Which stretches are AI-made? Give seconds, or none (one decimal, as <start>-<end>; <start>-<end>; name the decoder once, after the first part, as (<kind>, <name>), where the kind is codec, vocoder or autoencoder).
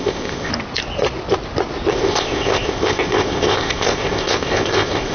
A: 0.0-0.5 (codec, ZipCodec); 1.9-5.1